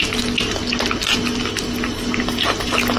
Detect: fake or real real